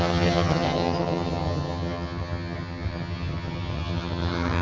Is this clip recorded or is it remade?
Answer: remade